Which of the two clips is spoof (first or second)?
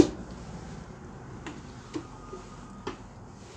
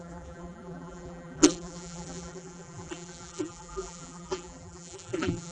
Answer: second